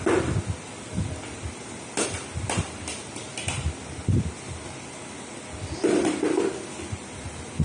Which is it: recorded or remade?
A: recorded